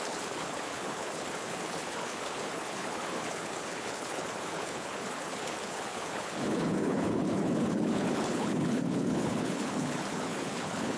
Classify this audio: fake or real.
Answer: fake